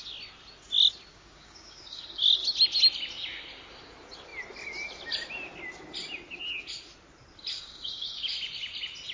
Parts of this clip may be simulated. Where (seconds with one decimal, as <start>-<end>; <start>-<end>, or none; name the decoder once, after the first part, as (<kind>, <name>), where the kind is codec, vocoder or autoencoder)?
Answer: 1.1-2.0 (codec, DAC); 7.5-8.3